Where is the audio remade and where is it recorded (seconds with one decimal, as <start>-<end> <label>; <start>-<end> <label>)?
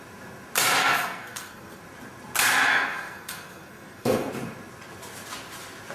0.0-0.8 recorded; 0.8-1.8 remade; 1.8-2.7 recorded; 2.7-4.3 remade; 4.3-5.9 recorded